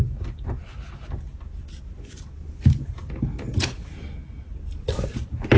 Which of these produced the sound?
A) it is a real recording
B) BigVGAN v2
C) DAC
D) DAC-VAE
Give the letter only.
A